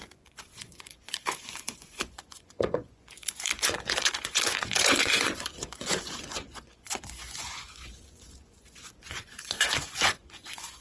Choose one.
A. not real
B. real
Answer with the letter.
A